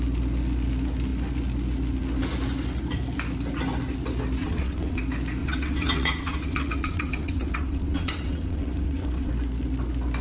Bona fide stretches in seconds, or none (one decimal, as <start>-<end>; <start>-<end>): 0.0-4.4; 5.0-5.4; 9.3-10.2